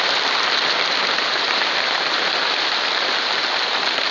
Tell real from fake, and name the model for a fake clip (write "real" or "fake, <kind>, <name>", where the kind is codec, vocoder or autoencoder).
real